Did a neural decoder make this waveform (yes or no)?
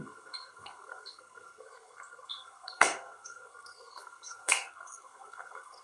yes